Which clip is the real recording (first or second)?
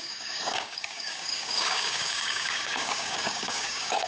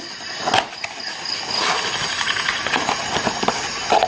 second